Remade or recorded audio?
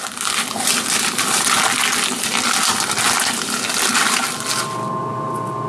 recorded